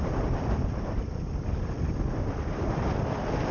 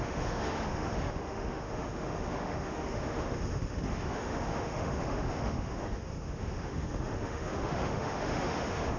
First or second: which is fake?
second